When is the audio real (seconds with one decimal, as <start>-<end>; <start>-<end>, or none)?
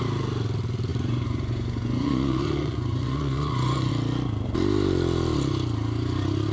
0.0-0.9; 3.9-6.5